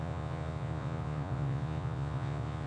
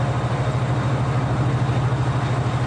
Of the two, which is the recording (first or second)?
second